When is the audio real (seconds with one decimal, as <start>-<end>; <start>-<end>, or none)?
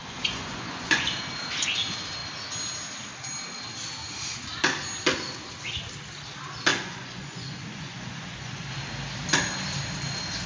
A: 1.1-6.7; 8.7-10.5